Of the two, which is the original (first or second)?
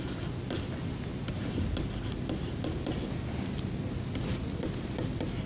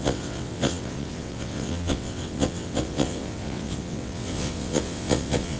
first